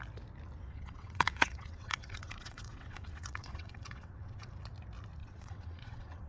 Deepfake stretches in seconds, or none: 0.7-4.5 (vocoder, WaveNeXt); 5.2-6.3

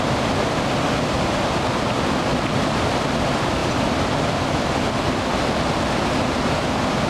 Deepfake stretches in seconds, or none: none

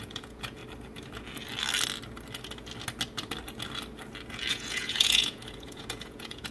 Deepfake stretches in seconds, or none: 0.0-0.6 (vocoder, Vocos); 4.5-6.5

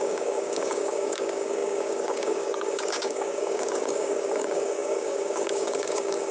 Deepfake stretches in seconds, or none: 0.0-6.3 (codec, DAC)